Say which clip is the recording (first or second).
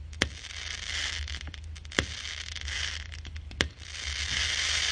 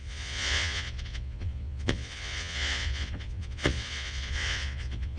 first